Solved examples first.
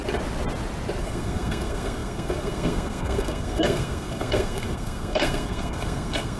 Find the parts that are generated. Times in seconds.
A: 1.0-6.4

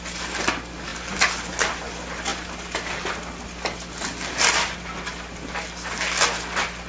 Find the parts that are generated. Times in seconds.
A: none

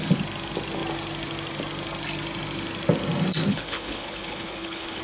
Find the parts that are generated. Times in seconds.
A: 3.5-5.0

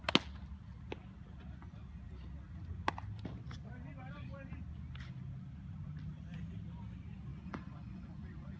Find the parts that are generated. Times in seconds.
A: 7.3-8.6